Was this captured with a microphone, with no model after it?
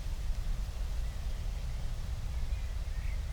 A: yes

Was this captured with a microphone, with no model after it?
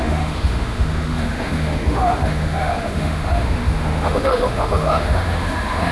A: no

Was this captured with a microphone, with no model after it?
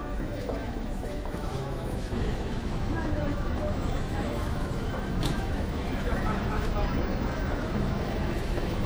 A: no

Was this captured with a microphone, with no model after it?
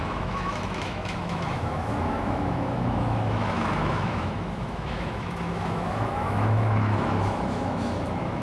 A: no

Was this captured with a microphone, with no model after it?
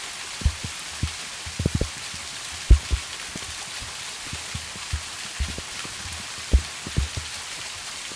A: yes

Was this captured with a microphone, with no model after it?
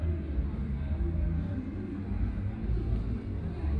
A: yes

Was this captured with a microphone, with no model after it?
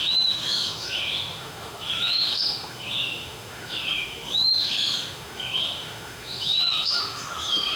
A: no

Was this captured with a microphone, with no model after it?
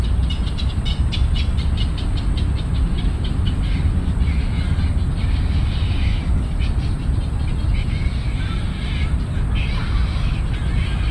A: yes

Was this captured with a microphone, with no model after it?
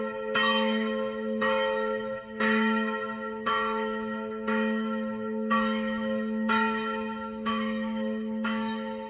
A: no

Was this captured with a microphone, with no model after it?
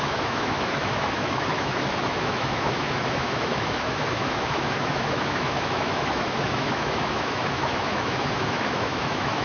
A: no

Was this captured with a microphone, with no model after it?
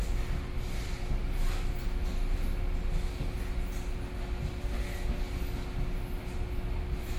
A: yes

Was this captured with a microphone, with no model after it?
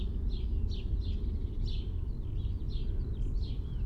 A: yes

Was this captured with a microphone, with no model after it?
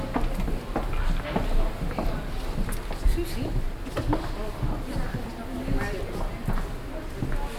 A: yes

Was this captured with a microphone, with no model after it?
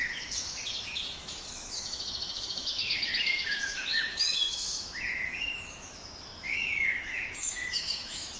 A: no